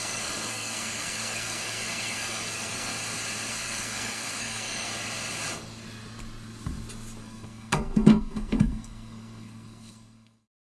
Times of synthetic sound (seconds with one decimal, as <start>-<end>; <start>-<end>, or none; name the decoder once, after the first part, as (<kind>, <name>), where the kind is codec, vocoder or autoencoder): 0.0-2.9 (codec, SNAC); 3.5-4.9; 7.2-10.7